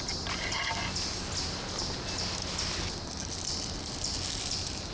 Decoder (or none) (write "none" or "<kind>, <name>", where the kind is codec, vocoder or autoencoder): none